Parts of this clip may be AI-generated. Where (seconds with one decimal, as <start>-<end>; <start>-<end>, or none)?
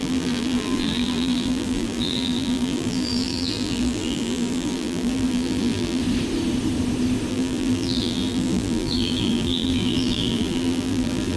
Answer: 0.0-6.0; 7.3-11.4